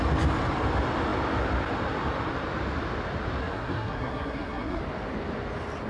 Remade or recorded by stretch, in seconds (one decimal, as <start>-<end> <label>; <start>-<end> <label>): 0.0-3.4 recorded; 3.4-4.8 remade; 4.8-5.9 recorded